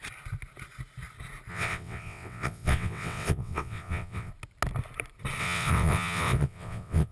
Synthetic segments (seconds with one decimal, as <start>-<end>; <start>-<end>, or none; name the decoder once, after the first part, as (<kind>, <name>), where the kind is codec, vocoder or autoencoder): 1.5-4.3 (vocoder, WaveNeXt); 5.4-7.1